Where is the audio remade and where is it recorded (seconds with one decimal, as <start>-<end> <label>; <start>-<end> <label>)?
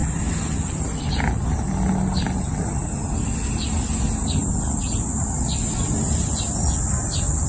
0.0-5.1 recorded; 5.1-6.3 remade; 6.3-7.5 recorded